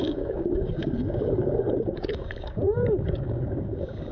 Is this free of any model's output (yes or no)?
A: no